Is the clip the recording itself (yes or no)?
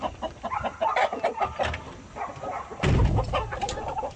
no